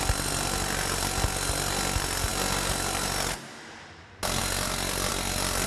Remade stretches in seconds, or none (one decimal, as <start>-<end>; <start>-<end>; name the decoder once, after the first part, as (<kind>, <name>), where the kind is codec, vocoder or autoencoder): none